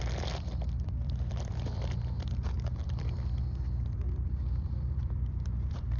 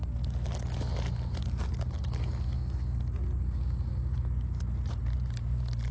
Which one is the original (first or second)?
second